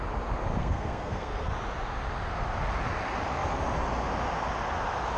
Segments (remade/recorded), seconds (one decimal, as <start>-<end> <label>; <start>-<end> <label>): 0.0-0.6 recorded; 0.6-1.5 remade; 1.5-5.2 recorded